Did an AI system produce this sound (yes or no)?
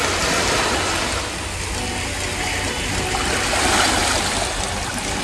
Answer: no